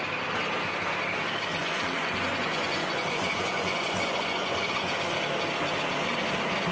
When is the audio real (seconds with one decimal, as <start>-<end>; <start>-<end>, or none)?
0.0-1.6; 4.9-6.7